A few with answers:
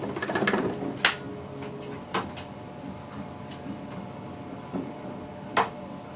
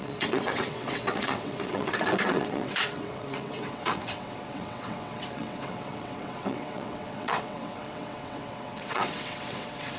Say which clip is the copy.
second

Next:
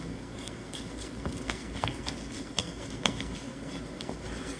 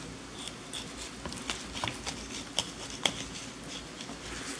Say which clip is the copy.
first